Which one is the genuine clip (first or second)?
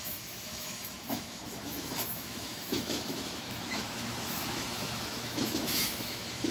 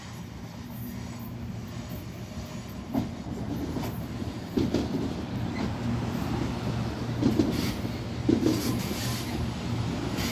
second